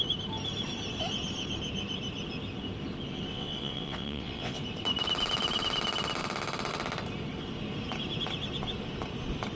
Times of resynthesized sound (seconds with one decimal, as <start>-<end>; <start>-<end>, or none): 3.3-4.6